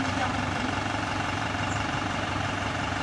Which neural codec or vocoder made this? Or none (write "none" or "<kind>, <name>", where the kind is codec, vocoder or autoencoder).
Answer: vocoder, BigVGAN v2